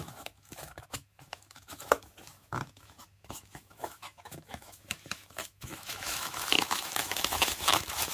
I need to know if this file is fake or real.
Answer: fake